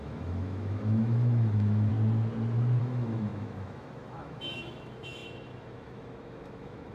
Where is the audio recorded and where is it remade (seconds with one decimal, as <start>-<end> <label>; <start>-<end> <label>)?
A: 0.0-1.9 remade; 1.9-2.8 recorded; 2.8-6.9 remade